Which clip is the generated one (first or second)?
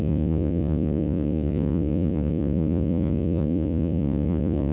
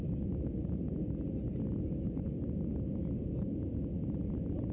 first